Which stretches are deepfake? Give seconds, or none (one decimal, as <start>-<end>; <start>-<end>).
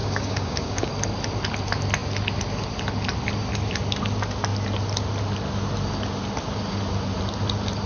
0.0-0.9